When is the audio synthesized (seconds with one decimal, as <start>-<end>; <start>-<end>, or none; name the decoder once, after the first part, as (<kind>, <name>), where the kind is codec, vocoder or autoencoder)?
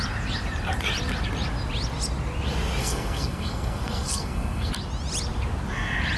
2.8-4.7 (codec, SNAC)